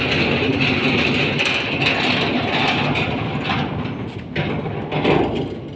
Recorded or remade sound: recorded